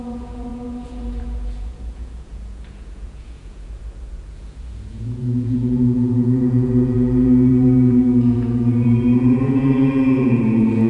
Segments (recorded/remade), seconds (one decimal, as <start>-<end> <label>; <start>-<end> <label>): 0.0-10.9 remade